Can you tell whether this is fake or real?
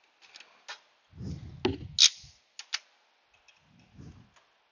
real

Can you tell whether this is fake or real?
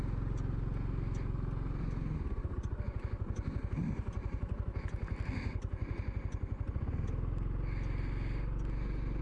real